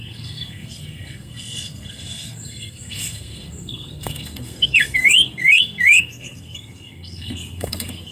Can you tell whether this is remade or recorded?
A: remade